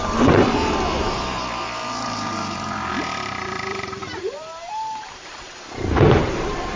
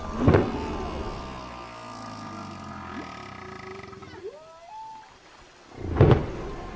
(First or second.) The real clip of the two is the second